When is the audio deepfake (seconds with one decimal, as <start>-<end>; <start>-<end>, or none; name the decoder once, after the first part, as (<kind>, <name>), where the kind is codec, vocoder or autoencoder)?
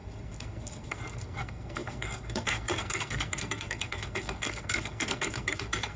0.0-6.0 (codec, SNAC)